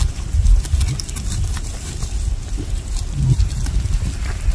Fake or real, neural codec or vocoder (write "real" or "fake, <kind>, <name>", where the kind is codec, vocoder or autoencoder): real